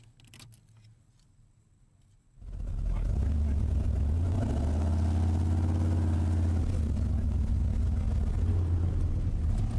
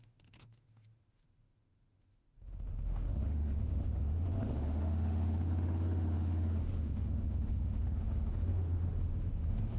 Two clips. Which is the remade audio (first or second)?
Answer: second